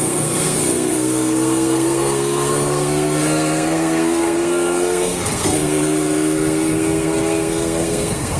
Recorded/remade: remade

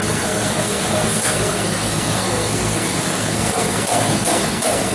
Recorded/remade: remade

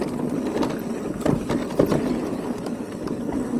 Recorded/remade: recorded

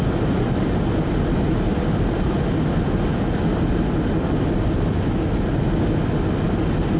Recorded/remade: recorded